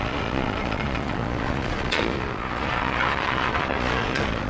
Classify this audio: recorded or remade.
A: remade